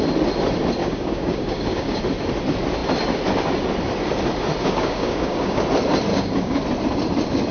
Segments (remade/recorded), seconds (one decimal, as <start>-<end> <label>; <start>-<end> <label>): 0.0-0.8 recorded; 0.8-2.0 remade; 2.0-4.6 recorded; 4.6-5.6 remade; 5.6-6.1 recorded; 6.1-6.6 remade; 6.6-7.5 recorded